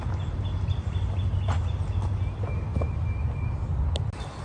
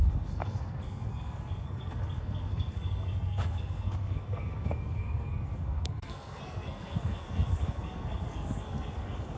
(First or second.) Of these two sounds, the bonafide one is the first